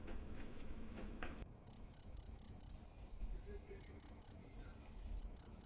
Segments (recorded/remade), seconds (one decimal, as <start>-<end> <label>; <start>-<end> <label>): 0.0-2.7 remade; 2.7-3.8 recorded; 3.8-4.4 remade; 4.4-5.2 recorded; 5.2-5.7 remade